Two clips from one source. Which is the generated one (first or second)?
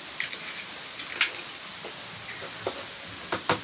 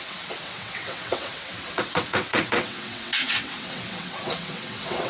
second